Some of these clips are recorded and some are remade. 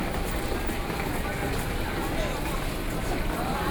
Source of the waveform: recorded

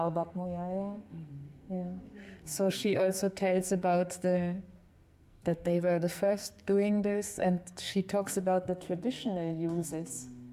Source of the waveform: remade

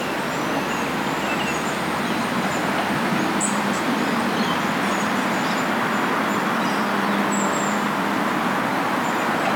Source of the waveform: recorded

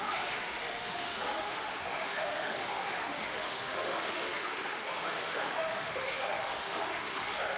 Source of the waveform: remade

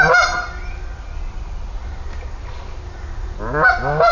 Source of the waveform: recorded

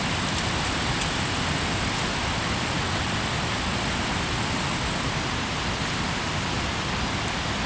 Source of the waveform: recorded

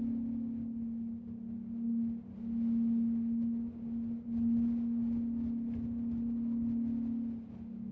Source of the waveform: recorded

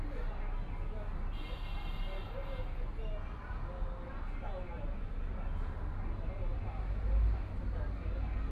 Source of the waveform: recorded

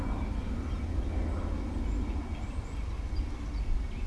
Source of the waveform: recorded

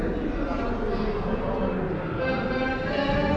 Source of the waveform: recorded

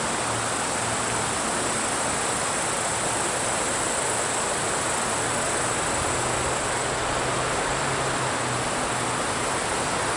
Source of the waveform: recorded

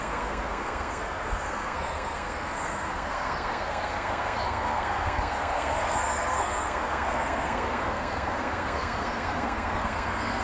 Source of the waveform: remade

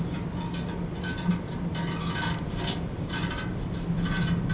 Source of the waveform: recorded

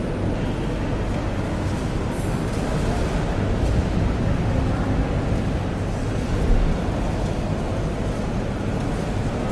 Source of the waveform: recorded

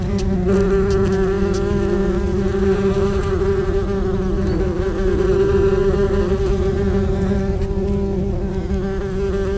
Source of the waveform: recorded